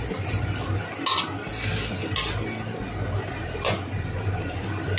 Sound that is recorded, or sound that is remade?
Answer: recorded